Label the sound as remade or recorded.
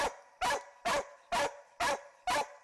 recorded